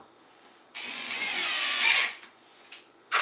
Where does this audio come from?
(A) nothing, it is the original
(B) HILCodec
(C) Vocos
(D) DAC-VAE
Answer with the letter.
C